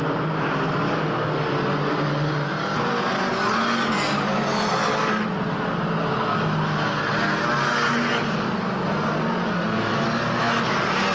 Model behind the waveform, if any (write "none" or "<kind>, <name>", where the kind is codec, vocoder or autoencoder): none